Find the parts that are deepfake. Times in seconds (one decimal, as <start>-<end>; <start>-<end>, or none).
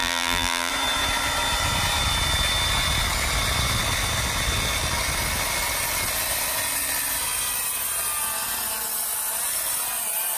0.0-0.7